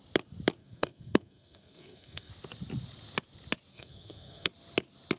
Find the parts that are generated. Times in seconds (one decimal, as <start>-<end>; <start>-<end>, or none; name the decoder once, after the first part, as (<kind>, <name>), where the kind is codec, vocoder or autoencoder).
0.6-2.3 (codec, SNAC); 3.7-4.5